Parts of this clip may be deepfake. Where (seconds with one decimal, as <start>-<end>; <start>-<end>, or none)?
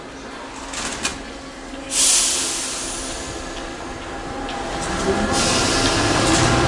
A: none